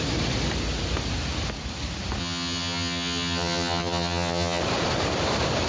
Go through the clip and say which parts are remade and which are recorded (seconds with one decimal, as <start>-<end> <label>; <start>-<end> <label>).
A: 0.0-2.2 recorded; 2.2-4.6 remade; 4.6-5.7 recorded